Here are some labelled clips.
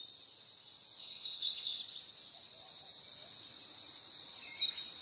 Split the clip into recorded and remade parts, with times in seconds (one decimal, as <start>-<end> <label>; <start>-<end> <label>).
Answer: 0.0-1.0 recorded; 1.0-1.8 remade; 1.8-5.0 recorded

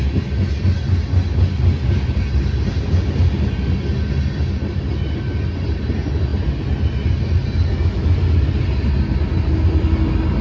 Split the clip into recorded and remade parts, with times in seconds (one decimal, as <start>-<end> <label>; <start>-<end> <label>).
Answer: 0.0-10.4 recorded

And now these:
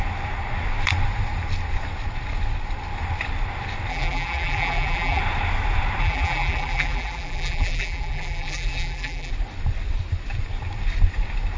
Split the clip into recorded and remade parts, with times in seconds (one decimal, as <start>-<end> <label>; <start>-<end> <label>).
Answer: 0.0-3.9 recorded; 3.9-5.2 remade; 5.2-6.0 recorded; 6.0-9.3 remade; 9.3-11.6 recorded

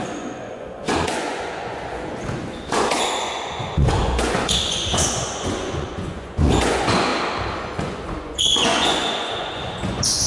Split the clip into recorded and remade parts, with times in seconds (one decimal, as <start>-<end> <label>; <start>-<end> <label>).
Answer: 0.0-7.1 remade; 7.1-7.6 recorded; 7.6-10.3 remade

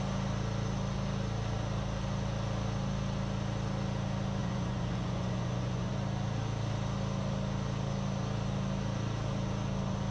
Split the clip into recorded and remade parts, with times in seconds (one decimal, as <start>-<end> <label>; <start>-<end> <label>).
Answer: 0.0-4.4 recorded; 4.4-5.9 remade; 5.9-10.1 recorded